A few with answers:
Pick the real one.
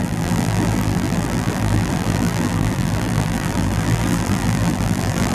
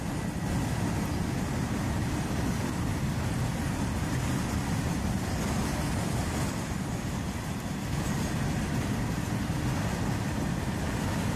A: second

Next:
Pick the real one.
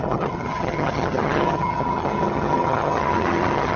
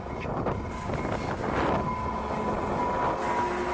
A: second